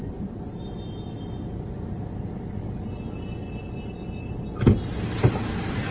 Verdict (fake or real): real